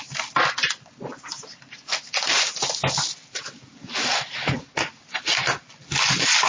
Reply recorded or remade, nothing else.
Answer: recorded